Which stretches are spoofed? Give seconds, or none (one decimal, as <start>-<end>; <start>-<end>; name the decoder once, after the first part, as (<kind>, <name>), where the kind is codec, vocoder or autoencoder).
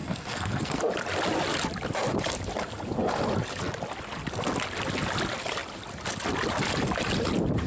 0.0-0.8 (codec, SNAC)